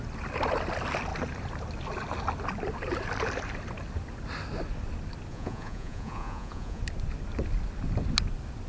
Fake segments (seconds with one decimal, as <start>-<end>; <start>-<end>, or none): 5.3-6.8